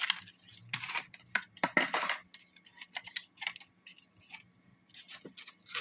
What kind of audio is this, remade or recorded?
recorded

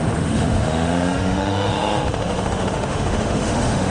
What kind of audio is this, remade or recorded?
remade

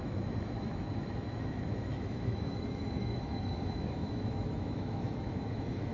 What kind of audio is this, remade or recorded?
remade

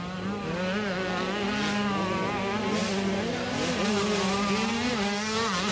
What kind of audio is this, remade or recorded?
recorded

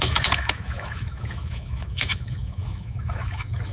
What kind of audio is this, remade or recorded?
remade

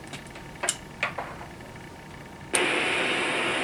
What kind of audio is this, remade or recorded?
recorded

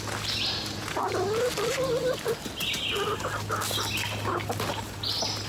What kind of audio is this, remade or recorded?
recorded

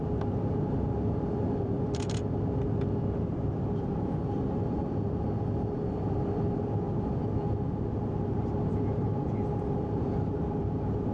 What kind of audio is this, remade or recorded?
recorded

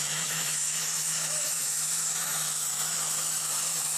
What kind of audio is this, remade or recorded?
remade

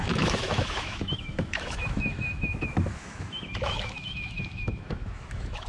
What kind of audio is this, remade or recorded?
remade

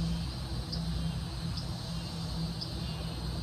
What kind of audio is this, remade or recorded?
recorded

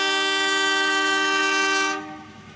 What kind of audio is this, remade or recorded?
remade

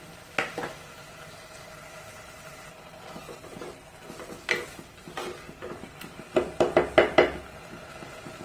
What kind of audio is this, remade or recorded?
recorded